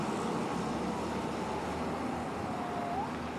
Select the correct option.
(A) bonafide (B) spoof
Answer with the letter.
A